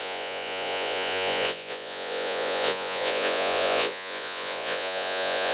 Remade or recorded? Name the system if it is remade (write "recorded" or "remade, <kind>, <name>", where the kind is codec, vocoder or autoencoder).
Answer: remade, vocoder, Vocos